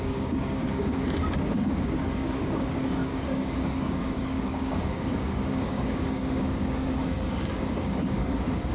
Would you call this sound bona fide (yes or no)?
no